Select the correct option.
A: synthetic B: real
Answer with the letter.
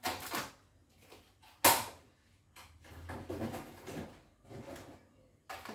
B